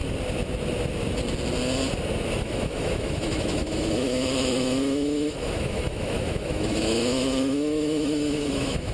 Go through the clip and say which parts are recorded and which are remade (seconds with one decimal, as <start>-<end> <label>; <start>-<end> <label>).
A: 0.0-2.4 recorded; 2.4-8.9 remade

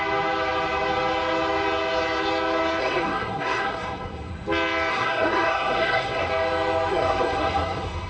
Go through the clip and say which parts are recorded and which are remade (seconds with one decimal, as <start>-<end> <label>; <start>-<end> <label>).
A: 0.0-2.8 recorded; 2.8-4.3 remade; 4.3-4.9 recorded; 4.9-6.3 remade; 6.3-6.9 recorded; 6.9-8.1 remade

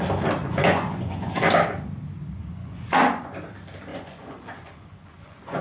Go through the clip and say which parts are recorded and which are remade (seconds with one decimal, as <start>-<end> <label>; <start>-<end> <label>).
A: 0.0-0.4 recorded; 0.4-1.4 remade; 1.4-2.2 recorded; 2.2-3.4 remade; 3.4-3.9 recorded; 3.9-5.6 remade

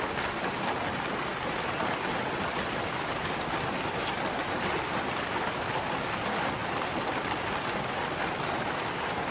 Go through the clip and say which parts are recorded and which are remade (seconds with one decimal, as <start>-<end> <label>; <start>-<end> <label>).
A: 0.0-9.3 recorded